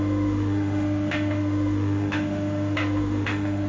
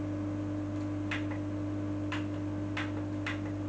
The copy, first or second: first